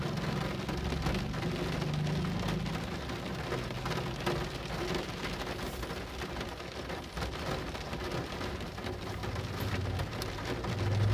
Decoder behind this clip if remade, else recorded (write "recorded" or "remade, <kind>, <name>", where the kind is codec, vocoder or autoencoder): recorded